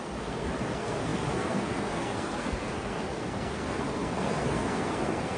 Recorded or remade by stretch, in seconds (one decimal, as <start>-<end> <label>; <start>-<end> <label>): 0.0-5.4 remade